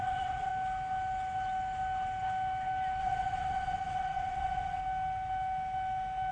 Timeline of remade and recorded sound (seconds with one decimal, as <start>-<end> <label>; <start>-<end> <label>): 0.0-0.5 remade; 0.5-3.0 recorded; 3.0-4.8 remade; 4.8-6.3 recorded